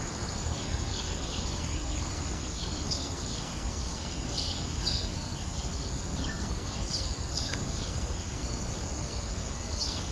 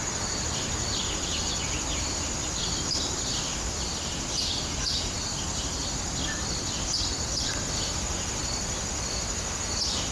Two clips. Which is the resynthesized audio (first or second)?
first